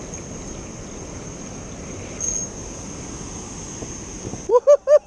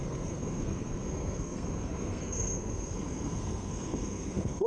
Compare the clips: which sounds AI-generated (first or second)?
second